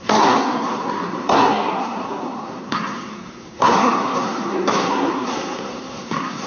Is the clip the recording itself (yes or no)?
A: no